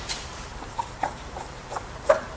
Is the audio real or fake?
fake